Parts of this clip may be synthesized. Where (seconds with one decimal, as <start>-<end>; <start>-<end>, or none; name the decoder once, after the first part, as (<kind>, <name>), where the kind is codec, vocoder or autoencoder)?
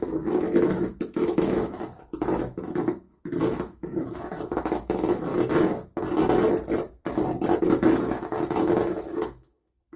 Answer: 0.0-5.3 (autoencoder, DAC-VAE); 7.6-10.0